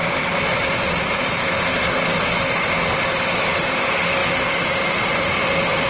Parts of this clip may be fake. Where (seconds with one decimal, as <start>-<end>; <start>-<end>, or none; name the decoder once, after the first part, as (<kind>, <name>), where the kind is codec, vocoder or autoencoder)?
none